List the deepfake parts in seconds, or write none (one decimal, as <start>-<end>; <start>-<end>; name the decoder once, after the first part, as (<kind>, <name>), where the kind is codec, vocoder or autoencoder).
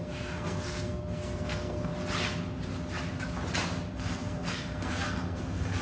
0.0-1.9 (codec, SNAC); 3.9-5.8